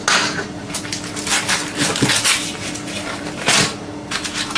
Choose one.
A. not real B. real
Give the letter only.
B